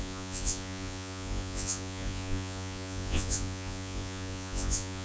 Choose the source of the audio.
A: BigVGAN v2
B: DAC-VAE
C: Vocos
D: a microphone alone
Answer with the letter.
C